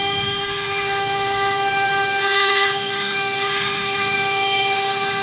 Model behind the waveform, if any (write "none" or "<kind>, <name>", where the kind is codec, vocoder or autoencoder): autoencoder, DAC-VAE